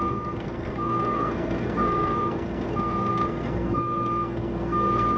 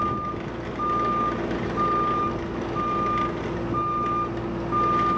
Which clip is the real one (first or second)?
second